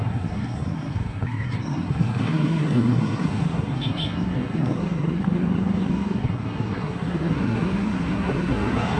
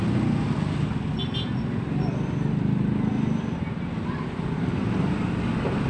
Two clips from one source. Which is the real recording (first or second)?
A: second